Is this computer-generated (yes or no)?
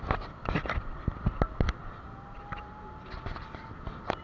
no